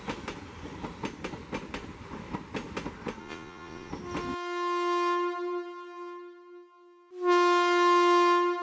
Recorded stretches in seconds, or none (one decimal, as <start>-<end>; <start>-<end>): 0.0-3.2; 3.9-8.6